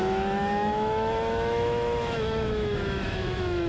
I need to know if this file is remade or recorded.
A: remade